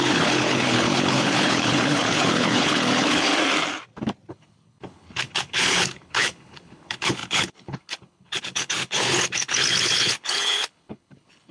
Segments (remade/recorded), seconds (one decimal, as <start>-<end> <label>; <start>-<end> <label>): 0.0-3.3 remade; 3.3-4.3 recorded; 4.3-11.5 remade